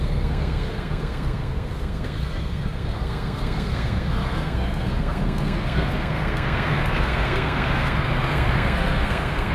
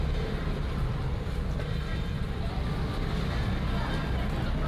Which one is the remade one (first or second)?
first